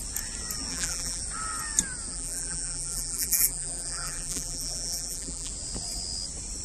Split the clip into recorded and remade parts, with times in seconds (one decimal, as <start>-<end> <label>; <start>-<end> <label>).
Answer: 0.0-0.7 recorded; 0.7-1.2 remade; 1.2-2.1 recorded; 2.1-5.5 remade; 5.5-6.6 recorded